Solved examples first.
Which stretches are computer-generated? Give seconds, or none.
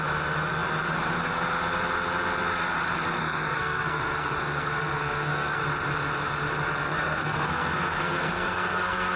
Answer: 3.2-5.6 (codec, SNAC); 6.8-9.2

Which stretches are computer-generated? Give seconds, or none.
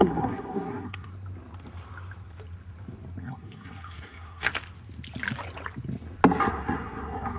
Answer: 0.0-1.1 (codec, SNAC); 3.2-4.5; 6.5-7.4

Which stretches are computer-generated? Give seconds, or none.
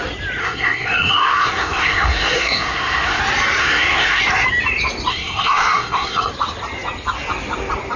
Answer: 0.4-3.2 (codec, SNAC); 3.6-4.2; 5.1-6.3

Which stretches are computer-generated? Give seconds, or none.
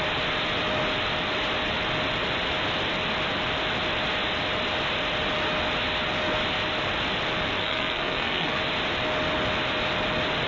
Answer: 7.6-8.6 (codec, SNAC)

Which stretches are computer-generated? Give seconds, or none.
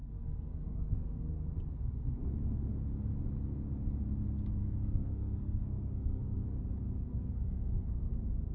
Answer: 0.0-1.4 (codec, SNAC); 4.6-6.6; 7.1-8.1